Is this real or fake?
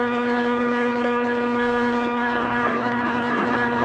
fake